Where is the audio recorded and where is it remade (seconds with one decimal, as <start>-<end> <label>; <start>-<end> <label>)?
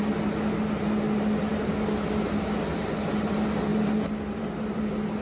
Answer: 0.0-5.2 recorded